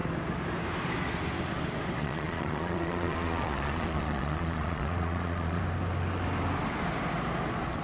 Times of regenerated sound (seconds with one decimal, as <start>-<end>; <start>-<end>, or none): 2.0-5.6